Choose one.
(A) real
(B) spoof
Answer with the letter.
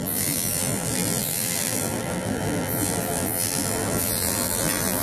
B